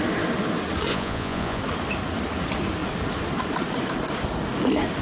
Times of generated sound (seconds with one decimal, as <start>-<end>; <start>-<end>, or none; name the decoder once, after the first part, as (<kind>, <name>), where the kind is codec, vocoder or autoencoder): 0.9-1.6 (vocoder, Vocos)